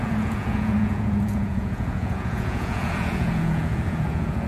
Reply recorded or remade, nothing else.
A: remade